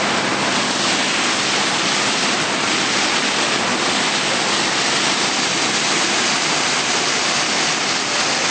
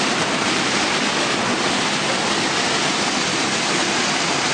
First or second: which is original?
first